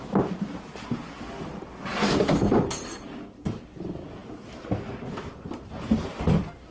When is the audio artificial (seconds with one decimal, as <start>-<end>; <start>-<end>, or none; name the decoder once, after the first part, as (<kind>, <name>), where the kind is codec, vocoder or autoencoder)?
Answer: none